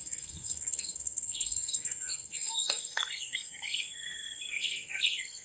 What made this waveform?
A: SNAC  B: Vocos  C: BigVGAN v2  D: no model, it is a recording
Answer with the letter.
A